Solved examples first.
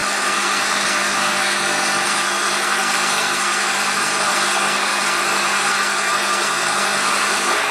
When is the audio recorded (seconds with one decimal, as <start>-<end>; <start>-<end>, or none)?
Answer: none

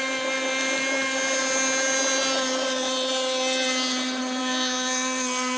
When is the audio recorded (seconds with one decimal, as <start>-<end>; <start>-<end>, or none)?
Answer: 0.0-4.4

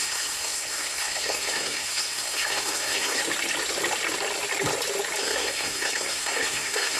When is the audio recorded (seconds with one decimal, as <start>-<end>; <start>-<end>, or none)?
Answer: 3.2-5.2

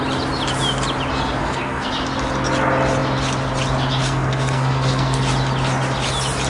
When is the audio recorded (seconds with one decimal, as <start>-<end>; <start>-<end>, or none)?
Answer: 0.0-1.4; 1.9-4.0; 5.2-6.5

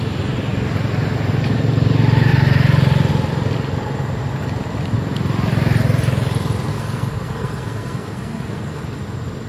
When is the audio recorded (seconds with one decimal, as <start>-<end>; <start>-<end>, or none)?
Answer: 0.0-6.7; 8.8-9.5

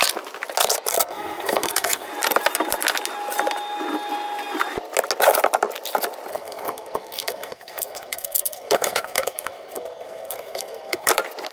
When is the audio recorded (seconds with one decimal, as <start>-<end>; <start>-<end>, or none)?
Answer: 0.0-0.9; 2.1-6.3; 11.1-11.5

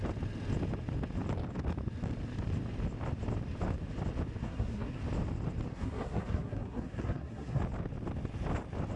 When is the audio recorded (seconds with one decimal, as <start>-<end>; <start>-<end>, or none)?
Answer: 0.0-4.4; 5.0-5.7; 7.6-9.0